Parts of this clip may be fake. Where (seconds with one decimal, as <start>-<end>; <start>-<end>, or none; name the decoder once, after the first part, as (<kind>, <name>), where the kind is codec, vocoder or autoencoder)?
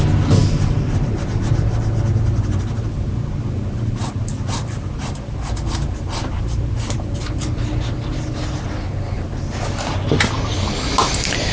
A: none